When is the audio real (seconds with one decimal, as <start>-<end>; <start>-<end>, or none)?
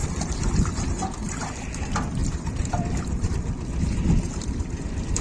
0.0-2.2; 3.3-5.2